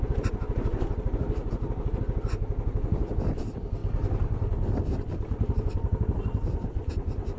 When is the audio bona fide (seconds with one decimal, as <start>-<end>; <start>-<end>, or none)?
0.0-7.4